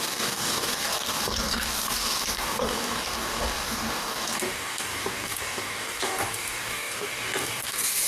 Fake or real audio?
fake